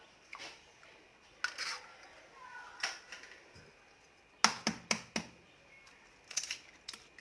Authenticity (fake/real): real